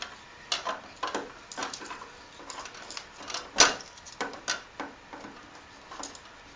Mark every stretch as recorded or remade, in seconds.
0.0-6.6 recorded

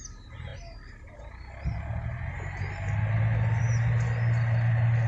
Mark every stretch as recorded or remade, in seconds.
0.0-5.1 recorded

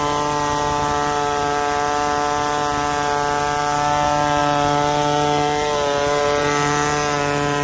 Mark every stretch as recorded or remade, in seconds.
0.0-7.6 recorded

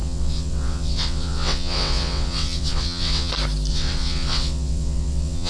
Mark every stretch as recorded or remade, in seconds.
0.0-3.3 remade; 3.3-3.7 recorded; 3.7-5.5 remade